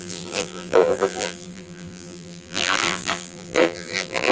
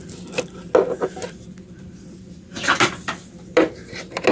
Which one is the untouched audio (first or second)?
second